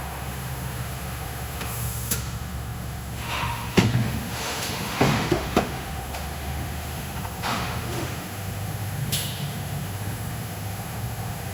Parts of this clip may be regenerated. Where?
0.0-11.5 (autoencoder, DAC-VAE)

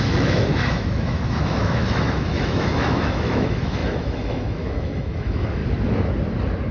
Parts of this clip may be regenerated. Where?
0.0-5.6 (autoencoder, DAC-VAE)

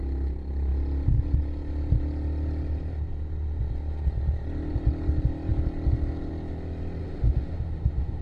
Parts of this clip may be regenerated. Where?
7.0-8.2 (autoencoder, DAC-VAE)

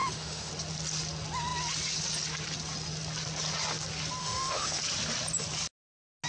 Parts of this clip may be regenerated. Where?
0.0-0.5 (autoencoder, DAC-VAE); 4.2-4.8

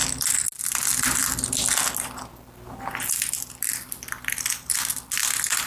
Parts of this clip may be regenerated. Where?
none

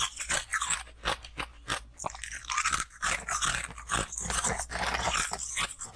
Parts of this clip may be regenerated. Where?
none